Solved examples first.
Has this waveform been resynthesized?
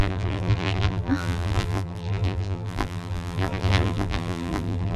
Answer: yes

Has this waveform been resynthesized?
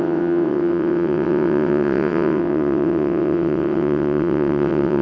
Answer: yes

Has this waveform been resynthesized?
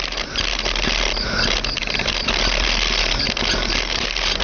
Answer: no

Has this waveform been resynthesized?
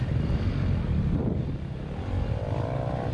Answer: yes